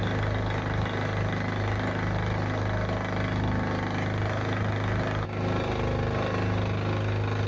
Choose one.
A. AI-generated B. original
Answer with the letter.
B